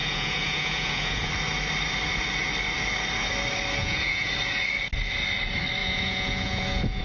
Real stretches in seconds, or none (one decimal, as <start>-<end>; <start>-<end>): 1.3-3.8; 4.3-5.8